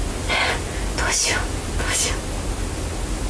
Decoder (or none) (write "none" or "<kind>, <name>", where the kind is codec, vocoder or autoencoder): none